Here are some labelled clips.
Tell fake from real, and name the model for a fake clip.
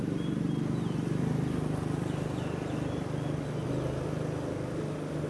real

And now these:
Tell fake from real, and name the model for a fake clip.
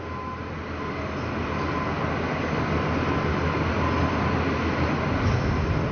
real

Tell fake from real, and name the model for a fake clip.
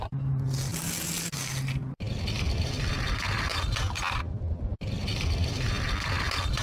real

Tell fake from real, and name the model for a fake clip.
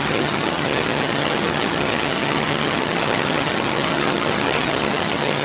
fake, vocoder, HiFi-GAN